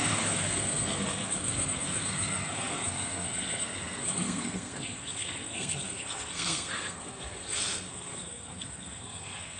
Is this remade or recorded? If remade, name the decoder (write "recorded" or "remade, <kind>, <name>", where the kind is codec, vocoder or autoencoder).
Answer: remade, codec, SNAC